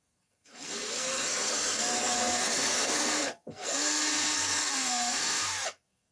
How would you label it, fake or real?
fake